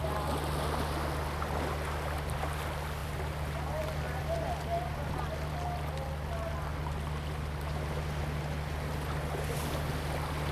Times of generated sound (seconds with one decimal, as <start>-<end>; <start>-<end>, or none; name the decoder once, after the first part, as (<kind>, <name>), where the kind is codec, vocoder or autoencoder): none